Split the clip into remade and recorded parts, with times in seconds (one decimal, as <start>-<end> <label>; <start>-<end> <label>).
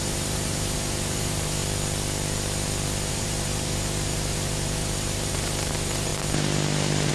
0.0-1.6 remade; 1.6-3.1 recorded; 3.1-6.1 remade; 6.1-7.1 recorded